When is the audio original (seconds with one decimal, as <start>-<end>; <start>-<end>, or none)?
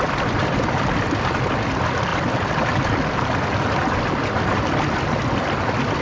0.0-6.0